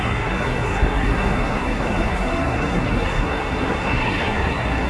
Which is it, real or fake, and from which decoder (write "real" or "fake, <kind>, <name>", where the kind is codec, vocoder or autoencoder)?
fake, codec, SNAC